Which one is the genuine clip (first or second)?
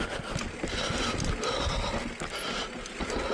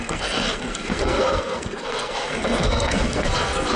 first